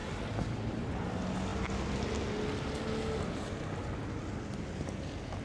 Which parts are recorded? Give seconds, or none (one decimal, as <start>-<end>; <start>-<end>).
0.9-5.4